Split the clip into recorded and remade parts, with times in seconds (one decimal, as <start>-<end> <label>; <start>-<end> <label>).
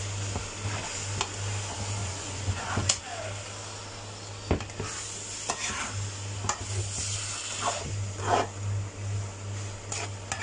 0.0-2.0 recorded; 2.0-3.0 remade; 3.0-10.4 recorded